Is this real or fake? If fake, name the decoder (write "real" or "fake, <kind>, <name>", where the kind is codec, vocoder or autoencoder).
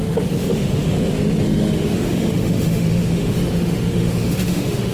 fake, autoencoder, DAC-VAE